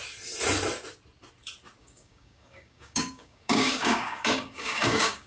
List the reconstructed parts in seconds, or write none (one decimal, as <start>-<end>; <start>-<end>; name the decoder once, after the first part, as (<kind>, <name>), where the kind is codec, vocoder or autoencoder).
1.8-5.3 (codec, DAC)